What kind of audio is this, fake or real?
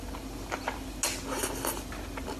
real